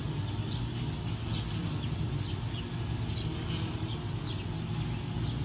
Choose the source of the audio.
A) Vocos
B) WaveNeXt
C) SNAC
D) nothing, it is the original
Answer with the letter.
D